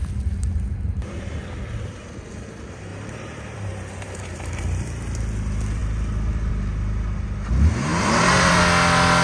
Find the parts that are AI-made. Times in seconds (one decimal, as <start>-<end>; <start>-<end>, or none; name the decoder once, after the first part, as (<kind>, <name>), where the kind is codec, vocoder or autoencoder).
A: 2.9-4.6 (vocoder, BigVGAN v2); 7.9-8.6